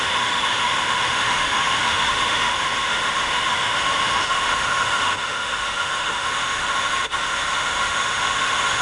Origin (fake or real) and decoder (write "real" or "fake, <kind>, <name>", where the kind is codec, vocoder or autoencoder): fake, autoencoder, DAC-VAE